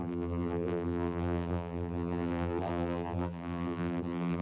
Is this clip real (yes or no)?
no